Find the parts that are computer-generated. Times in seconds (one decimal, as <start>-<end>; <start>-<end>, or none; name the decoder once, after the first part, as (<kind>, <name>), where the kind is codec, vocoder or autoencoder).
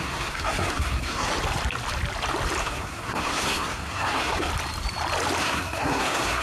0.0-1.3 (codec, SNAC); 2.6-4.5; 5.4-6.4